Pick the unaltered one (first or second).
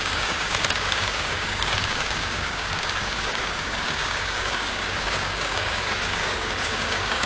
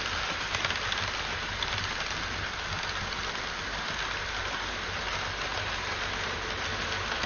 second